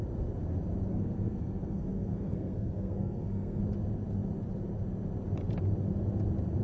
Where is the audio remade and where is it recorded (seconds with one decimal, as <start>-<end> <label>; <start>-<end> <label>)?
0.0-0.9 recorded; 0.9-3.6 remade; 3.6-6.6 recorded